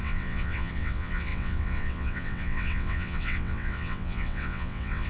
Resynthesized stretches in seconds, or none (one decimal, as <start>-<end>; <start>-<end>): 0.0-5.1